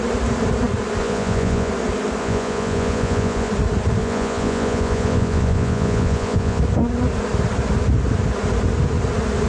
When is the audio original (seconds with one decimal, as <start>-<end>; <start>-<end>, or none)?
0.0-1.0; 1.7-2.2; 3.5-4.0; 6.6-9.5